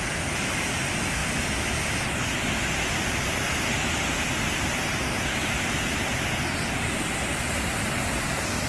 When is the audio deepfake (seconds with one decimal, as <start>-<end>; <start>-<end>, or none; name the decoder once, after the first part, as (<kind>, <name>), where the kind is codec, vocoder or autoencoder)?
none